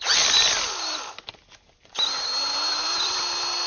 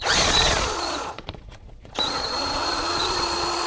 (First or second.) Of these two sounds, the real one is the first